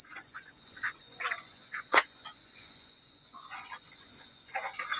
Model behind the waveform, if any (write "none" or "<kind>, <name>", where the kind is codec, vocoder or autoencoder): vocoder, Vocos